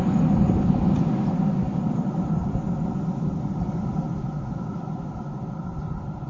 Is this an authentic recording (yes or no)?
yes